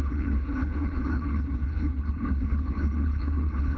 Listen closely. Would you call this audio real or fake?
fake